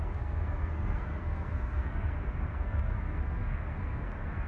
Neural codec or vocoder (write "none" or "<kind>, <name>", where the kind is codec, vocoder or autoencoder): codec, SNAC